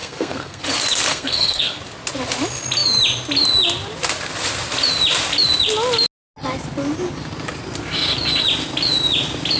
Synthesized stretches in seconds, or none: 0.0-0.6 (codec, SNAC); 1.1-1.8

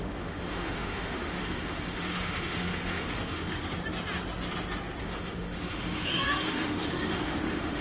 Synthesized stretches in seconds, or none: 0.0-3.6 (autoencoder, DAC-VAE); 5.0-7.8

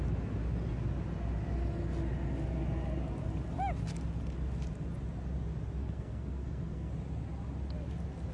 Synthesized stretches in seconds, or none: 5.8-6.9 (codec, SNAC)

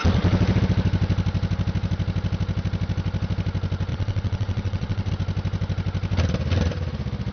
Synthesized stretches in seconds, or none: 3.9-5.1 (vocoder, WaveNeXt)